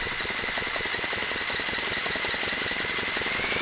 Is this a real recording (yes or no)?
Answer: yes